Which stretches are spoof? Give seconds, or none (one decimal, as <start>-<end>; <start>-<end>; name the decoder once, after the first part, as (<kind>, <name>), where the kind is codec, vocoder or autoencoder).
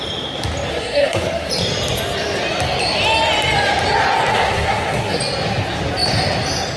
0.7-1.5 (codec, SNAC); 4.3-5.2